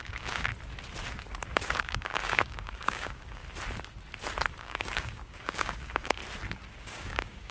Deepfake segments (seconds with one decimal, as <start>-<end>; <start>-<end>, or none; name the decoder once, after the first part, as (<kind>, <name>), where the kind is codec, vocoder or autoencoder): 0.0-0.5 (codec, DAC); 1.8-3.4; 4.6-6.2; 6.8-7.5